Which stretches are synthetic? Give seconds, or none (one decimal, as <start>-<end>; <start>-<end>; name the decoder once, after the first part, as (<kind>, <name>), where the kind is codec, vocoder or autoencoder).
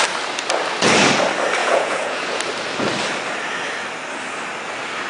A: 1.6-2.4 (vocoder, Vocos)